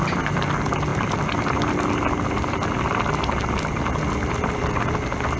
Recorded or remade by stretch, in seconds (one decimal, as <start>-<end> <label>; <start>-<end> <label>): 0.0-5.4 recorded